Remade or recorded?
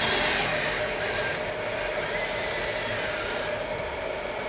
recorded